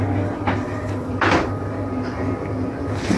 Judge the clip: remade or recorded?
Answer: remade